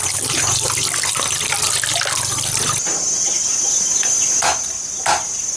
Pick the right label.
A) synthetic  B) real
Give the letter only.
B